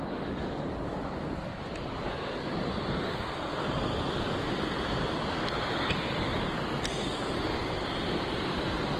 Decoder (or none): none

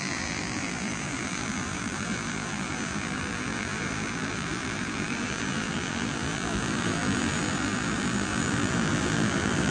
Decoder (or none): vocoder, BigVGAN v2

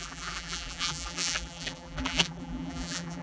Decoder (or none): vocoder, BigVGAN v2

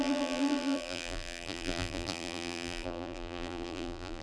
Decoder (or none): vocoder, BigVGAN v2